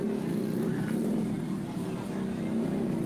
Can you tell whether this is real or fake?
real